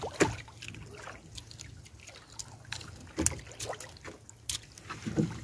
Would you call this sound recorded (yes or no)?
yes